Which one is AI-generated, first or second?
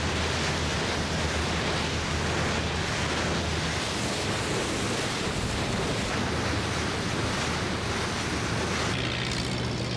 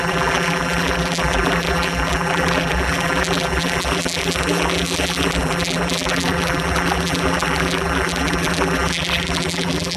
second